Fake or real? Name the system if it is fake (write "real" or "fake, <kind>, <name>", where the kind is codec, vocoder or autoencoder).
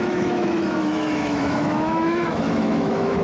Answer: fake, autoencoder, DAC-VAE